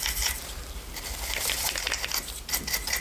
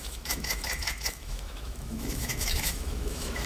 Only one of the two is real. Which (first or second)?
first